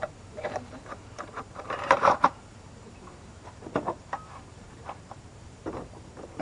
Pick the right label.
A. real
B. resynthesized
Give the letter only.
B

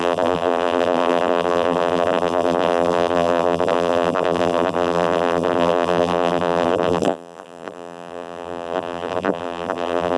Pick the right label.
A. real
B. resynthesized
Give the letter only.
B